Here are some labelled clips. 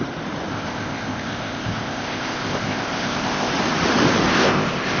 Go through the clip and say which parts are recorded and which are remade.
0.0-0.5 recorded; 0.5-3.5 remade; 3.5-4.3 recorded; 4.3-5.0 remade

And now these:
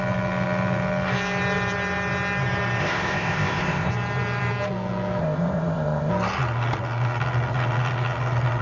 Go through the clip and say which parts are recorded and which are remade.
0.0-2.8 recorded; 2.8-3.9 remade; 3.9-5.2 recorded; 5.2-6.1 remade; 6.1-8.6 recorded

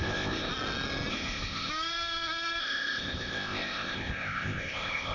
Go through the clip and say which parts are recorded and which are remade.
0.0-0.5 remade; 0.5-1.1 recorded; 1.1-1.7 remade; 1.7-2.6 recorded; 2.6-5.1 remade

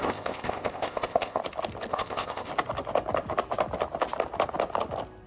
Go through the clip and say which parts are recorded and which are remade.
0.0-1.4 remade; 1.4-1.9 recorded; 1.9-2.5 remade; 2.5-5.3 recorded

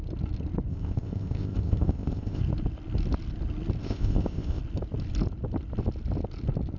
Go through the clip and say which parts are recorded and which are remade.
0.0-0.7 recorded; 0.7-2.4 remade; 2.4-3.8 recorded; 3.8-4.6 remade; 4.6-6.8 recorded

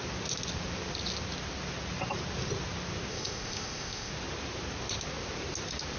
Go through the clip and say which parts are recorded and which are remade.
0.0-3.1 recorded; 3.1-4.1 remade; 4.1-6.0 recorded

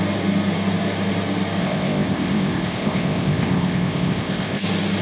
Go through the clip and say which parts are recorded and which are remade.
0.0-1.6 recorded; 1.6-4.6 remade; 4.6-5.0 recorded